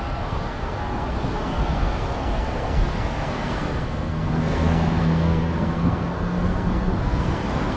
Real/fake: fake